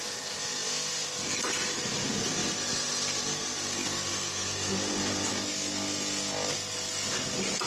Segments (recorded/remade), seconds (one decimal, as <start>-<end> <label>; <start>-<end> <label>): 0.0-7.7 recorded